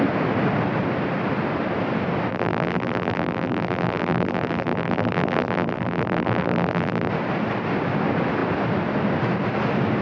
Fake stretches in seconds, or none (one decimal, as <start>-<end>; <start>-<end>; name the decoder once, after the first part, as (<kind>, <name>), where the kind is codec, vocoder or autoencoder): 2.3-7.1 (vocoder, BigVGAN v2)